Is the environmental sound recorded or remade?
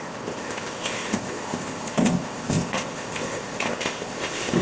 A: remade